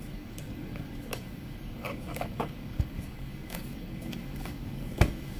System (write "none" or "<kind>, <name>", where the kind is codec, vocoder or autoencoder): codec, DAC